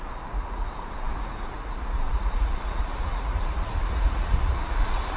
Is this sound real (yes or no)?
no